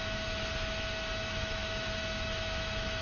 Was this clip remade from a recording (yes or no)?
yes